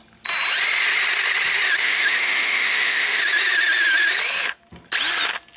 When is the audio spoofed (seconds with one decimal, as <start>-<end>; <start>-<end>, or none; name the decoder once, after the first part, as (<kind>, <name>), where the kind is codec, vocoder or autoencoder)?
1.8-3.2 (autoencoder, DAC-VAE)